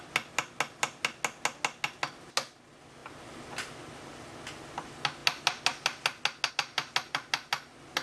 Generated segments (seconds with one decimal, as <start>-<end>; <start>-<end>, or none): none